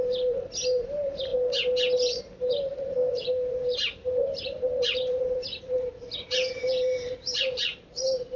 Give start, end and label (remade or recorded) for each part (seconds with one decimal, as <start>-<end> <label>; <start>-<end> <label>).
0.0-1.3 remade; 1.3-2.5 recorded; 2.5-8.4 remade